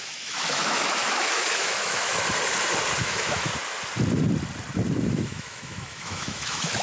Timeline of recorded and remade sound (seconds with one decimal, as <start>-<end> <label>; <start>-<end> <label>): 0.0-2.1 remade; 2.1-3.0 recorded; 3.0-3.5 remade; 3.5-5.1 recorded; 5.1-6.8 remade